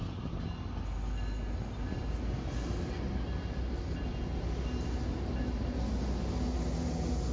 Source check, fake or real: real